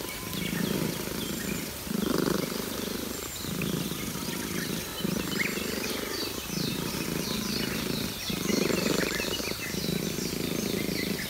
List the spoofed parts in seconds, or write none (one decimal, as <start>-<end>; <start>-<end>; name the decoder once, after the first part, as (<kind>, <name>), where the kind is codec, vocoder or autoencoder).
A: none